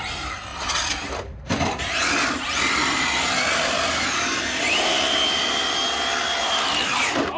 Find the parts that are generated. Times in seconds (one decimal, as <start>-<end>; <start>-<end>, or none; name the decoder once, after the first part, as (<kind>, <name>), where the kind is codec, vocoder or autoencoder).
none